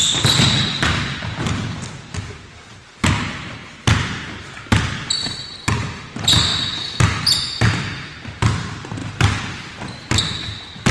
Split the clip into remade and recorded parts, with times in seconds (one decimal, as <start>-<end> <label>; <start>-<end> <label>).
0.0-3.6 remade; 3.6-4.3 recorded; 4.3-6.5 remade; 6.5-7.5 recorded; 7.5-10.9 remade